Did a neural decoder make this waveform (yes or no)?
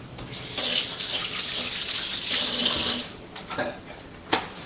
no